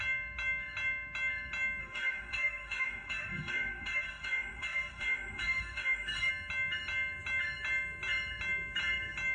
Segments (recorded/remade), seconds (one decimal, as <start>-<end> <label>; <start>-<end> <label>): 0.0-1.8 recorded; 1.8-6.3 remade; 6.3-9.3 recorded